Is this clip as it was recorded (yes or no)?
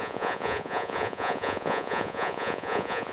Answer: no